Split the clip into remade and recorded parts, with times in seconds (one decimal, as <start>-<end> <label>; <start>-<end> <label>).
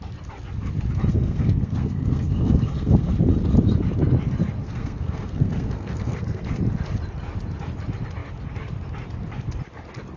0.0-1.1 recorded; 1.1-3.1 remade; 3.1-4.6 recorded; 4.6-6.6 remade; 6.6-10.2 recorded